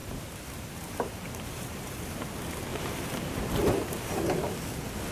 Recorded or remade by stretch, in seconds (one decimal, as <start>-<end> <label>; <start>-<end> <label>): 0.0-2.2 remade; 2.2-2.7 recorded; 2.7-4.1 remade; 4.1-5.1 recorded